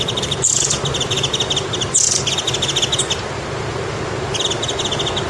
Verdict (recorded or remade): recorded